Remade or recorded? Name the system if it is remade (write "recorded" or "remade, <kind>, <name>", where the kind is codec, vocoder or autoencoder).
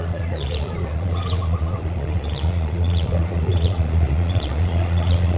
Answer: remade, vocoder, Vocos